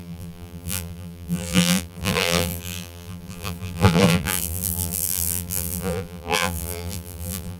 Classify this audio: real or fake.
fake